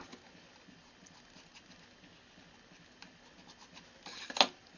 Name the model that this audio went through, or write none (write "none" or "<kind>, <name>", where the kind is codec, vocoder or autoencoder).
none